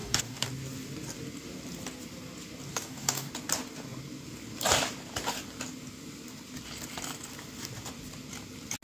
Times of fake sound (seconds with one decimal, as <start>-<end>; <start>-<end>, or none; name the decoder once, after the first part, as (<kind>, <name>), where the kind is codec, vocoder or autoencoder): 0.0-0.5 (codec, DAC); 2.7-3.3